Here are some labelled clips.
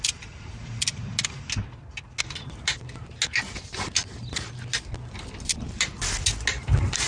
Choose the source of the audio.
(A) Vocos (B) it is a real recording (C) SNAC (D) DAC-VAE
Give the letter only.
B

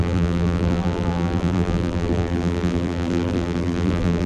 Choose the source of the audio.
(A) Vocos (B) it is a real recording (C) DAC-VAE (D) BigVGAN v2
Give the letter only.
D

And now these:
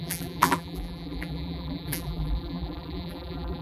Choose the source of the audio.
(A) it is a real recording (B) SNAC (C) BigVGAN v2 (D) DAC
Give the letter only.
C